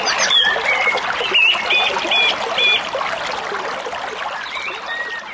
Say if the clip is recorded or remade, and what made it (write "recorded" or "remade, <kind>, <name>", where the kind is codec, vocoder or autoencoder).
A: recorded